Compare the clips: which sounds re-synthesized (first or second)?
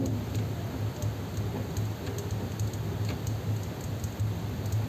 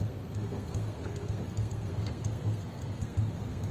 second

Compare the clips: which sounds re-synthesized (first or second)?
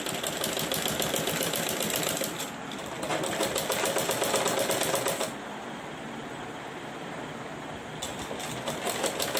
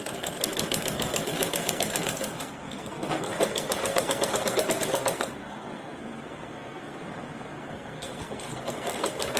second